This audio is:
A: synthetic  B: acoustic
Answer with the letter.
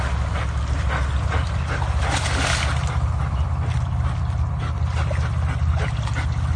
B